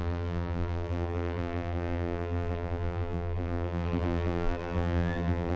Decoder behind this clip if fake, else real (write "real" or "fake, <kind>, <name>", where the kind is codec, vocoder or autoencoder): fake, vocoder, BigVGAN v2